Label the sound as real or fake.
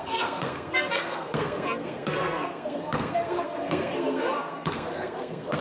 fake